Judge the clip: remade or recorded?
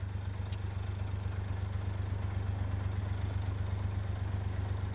recorded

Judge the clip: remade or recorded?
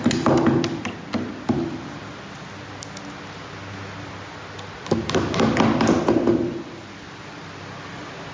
recorded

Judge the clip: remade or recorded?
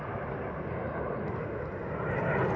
recorded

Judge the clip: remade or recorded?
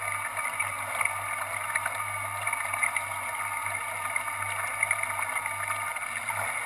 recorded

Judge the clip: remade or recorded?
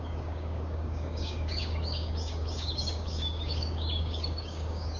remade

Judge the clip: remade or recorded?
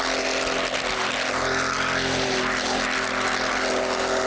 recorded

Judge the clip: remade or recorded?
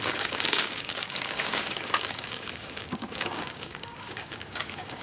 remade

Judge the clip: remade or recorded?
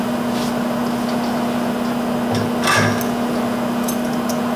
recorded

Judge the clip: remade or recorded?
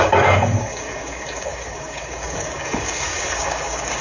remade